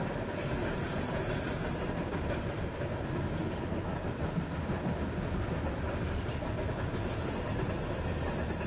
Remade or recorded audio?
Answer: recorded